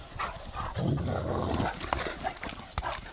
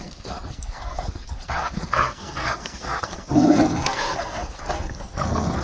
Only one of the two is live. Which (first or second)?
first